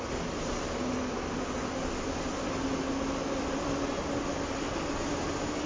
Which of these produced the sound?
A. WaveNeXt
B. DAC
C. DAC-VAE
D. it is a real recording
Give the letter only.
D